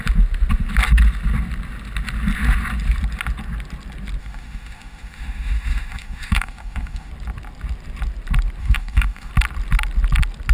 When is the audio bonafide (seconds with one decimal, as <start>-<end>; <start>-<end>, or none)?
0.0-4.2; 7.1-8.6; 9.3-10.5